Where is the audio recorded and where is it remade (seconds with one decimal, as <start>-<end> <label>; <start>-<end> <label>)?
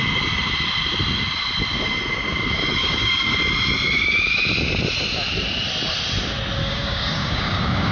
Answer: 0.0-2.8 recorded; 2.8-3.4 remade; 3.4-6.6 recorded; 6.6-7.9 remade